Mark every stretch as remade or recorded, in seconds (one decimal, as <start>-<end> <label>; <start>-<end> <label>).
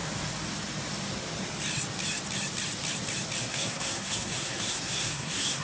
0.0-3.4 recorded; 3.4-5.6 remade